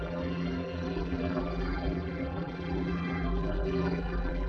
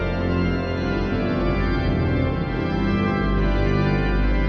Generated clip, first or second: first